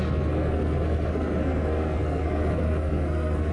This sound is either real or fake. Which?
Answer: fake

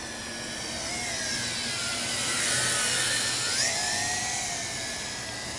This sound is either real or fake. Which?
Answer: real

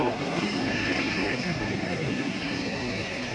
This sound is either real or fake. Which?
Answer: fake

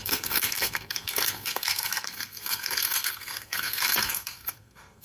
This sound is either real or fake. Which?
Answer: fake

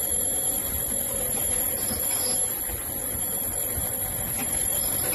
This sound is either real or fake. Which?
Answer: real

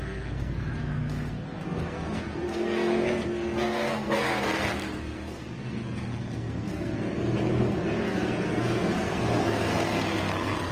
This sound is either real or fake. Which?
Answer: fake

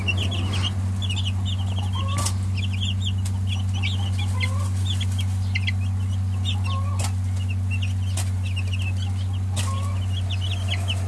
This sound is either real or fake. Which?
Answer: real